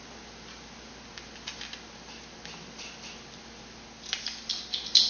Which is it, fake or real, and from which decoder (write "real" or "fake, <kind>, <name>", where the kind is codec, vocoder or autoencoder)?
real